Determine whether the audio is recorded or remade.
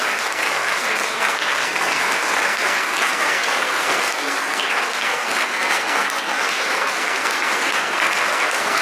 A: remade